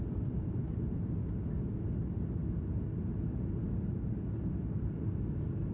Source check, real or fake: real